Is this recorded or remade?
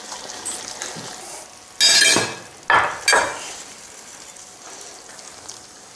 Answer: recorded